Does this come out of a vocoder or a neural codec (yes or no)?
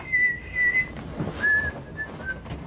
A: no